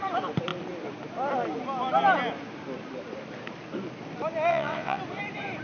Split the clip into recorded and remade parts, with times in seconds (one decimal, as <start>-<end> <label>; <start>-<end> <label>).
0.0-4.5 recorded; 4.5-5.0 remade; 5.0-5.6 recorded